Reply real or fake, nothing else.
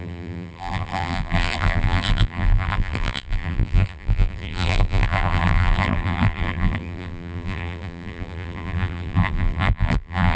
fake